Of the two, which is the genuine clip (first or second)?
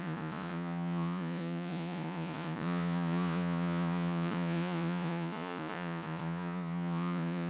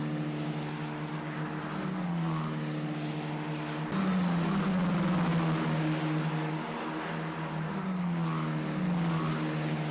second